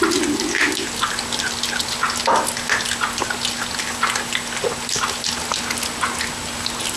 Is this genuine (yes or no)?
yes